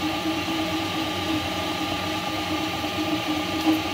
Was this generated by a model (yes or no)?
yes